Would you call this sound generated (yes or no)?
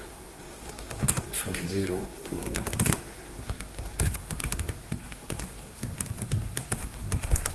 yes